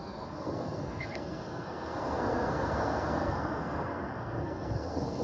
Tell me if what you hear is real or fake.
fake